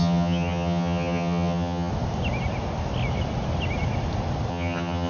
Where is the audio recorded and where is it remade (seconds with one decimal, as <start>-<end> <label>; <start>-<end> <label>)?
0.0-1.9 remade; 1.9-4.5 recorded; 4.5-5.1 remade